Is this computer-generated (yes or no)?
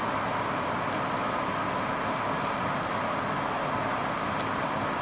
no